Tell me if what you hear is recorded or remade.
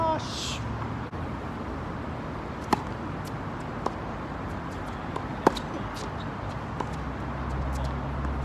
recorded